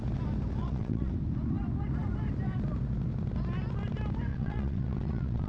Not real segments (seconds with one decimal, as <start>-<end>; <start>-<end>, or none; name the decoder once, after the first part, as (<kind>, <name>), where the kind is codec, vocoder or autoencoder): 0.6-1.1 (vocoder, WaveNeXt); 4.3-5.5